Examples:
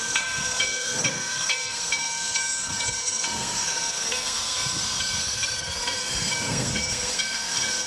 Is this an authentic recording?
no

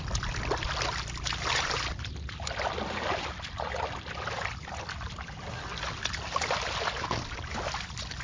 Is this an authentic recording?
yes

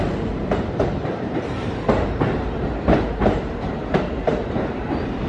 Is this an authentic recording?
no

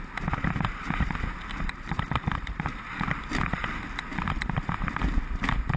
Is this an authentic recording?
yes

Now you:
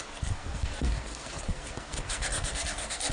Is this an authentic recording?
no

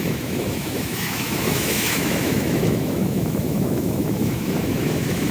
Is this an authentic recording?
no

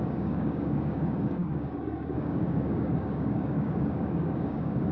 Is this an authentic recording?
no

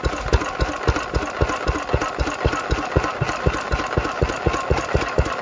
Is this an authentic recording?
yes